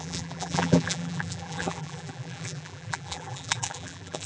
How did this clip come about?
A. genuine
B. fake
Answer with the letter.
B